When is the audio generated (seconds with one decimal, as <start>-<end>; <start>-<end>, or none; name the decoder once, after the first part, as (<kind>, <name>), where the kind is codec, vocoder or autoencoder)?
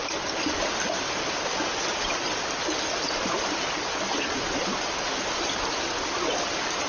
1.7-3.3 (vocoder, BigVGAN v2)